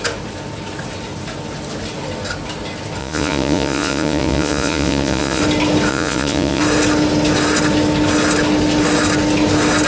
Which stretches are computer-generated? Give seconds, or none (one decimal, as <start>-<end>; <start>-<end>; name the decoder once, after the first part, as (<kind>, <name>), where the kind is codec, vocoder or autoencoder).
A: 3.0-5.4 (vocoder, Vocos); 5.9-6.6